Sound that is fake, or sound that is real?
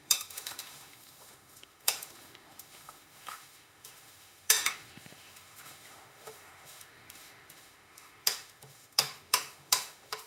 fake